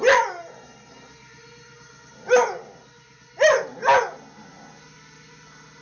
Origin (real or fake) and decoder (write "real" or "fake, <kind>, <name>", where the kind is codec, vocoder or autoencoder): real